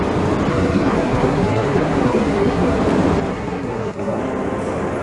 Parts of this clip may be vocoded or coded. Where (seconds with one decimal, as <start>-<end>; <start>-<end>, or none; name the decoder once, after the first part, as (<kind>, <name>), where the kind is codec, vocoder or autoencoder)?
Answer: 0.5-2.8 (codec, SNAC); 3.3-4.2